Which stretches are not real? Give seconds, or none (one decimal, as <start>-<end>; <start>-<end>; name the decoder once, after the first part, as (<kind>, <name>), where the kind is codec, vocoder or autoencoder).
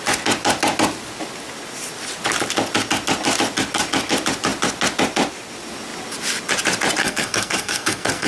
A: 7.0-8.3 (codec, SNAC)